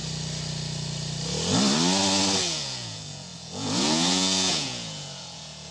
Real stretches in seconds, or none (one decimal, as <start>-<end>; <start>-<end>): 0.0-2.4